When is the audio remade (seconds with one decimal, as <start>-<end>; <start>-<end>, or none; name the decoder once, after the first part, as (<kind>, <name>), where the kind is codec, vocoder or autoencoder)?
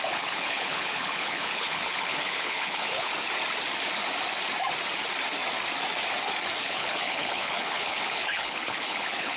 0.0-3.1 (codec, HILCodec); 6.6-9.4